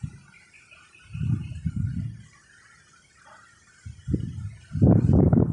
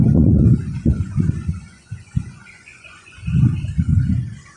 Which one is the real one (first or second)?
first